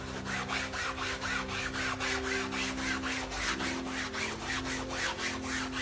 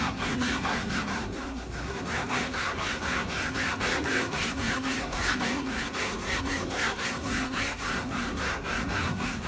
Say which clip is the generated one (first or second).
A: second